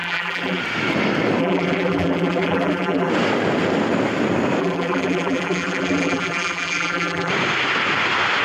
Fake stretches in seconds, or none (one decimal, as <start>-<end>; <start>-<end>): 0.0-0.6; 1.4-3.1; 4.6-7.3